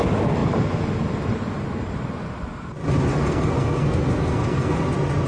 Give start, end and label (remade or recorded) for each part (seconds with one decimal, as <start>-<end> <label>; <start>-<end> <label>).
0.0-3.1 recorded; 3.1-4.7 remade; 4.7-5.3 recorded